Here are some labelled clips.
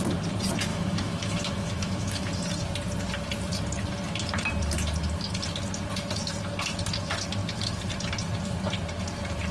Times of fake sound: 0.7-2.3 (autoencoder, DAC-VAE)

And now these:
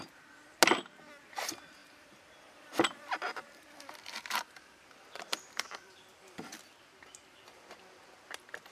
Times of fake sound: 1.8-6.6 (vocoder, BigVGAN v2)

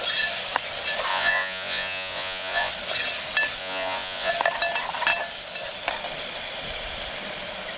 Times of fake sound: 1.1-2.7 (vocoder, Vocos); 3.6-4.3

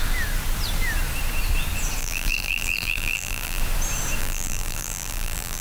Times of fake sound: 2.0-3.6 (vocoder, BigVGAN v2); 4.2-5.6

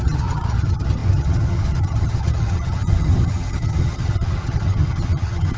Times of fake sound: 0.0-5.6 (vocoder, HiFi-GAN)

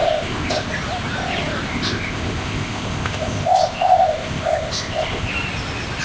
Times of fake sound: 0.0-0.7 (codec, ZipCodec); 1.7-5.3

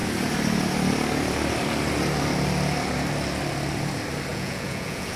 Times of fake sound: 4.3-5.2 (vocoder, Vocos)

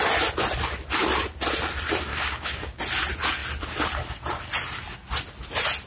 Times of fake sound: 2.1-2.8 (codec, DAC)